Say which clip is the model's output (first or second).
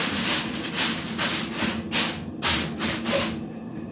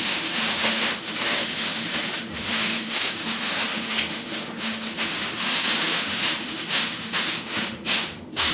second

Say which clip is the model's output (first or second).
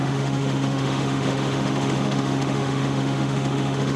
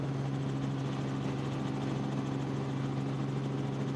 first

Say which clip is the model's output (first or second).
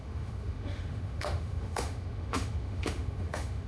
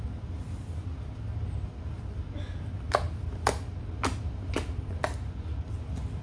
first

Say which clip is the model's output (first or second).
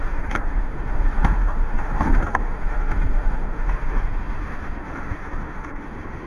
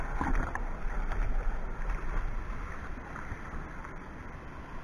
first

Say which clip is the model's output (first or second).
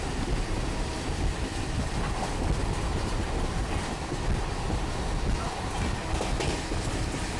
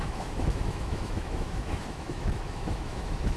second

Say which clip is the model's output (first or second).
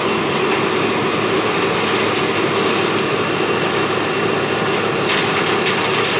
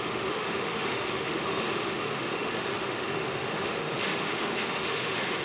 second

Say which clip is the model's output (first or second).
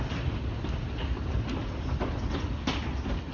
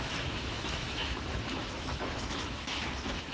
second